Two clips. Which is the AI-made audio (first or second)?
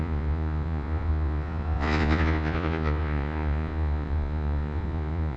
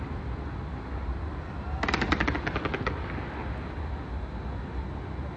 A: first